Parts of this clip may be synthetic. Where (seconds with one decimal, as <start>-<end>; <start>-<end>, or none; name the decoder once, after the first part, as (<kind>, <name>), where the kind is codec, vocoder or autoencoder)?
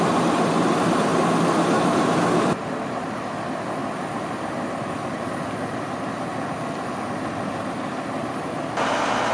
none